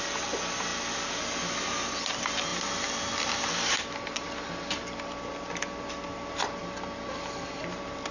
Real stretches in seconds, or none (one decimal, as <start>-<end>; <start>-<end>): none